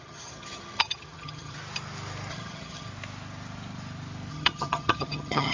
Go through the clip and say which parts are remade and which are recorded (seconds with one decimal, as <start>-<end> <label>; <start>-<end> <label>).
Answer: 0.0-1.6 remade; 1.6-2.3 recorded; 2.3-2.9 remade; 2.9-4.3 recorded; 4.3-5.5 remade

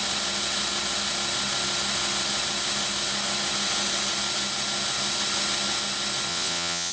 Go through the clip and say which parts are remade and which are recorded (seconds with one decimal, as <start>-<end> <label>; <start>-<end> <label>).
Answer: 0.0-6.3 recorded; 6.3-6.9 remade

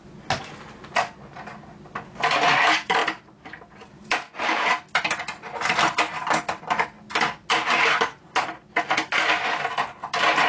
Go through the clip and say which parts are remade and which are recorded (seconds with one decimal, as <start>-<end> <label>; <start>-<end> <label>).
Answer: 0.0-10.5 recorded

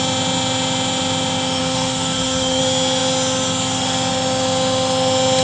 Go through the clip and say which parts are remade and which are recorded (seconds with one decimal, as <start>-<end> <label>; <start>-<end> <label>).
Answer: 0.0-1.6 recorded; 1.6-2.6 remade; 2.6-5.4 recorded